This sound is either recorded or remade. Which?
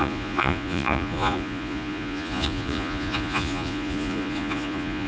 remade